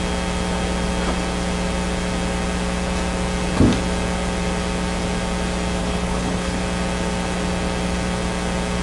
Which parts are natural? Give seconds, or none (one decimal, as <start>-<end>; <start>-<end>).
0.0-5.8; 6.6-8.8